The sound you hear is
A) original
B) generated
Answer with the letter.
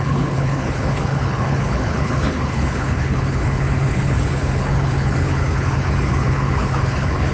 B